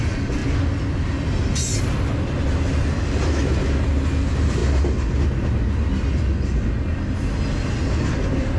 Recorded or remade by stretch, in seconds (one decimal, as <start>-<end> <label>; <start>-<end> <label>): 0.0-8.6 recorded